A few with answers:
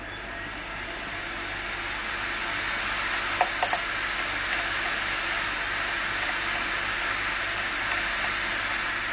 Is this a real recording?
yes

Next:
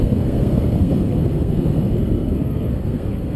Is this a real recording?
no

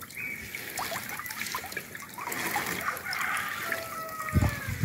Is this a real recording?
yes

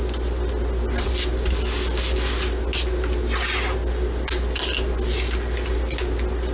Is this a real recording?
yes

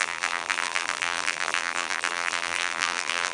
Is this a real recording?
no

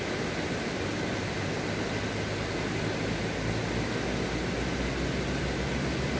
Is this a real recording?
yes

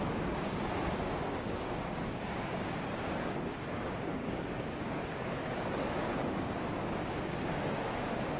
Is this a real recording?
no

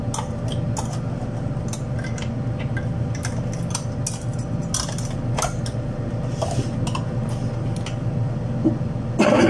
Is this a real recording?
yes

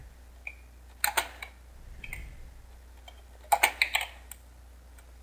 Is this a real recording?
yes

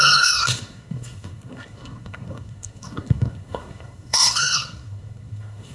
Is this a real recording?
no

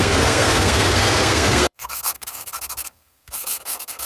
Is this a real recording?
no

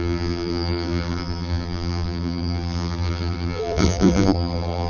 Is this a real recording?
no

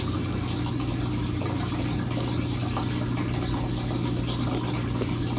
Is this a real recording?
yes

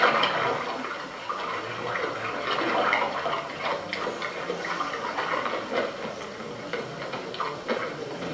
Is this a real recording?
yes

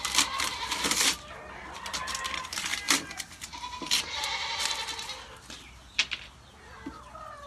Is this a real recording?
yes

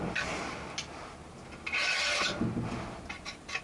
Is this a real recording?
yes